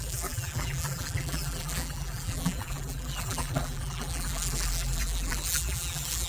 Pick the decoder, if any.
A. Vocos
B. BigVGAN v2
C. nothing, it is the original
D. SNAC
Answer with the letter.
B